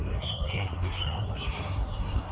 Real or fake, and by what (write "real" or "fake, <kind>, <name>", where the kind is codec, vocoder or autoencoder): fake, codec, SNAC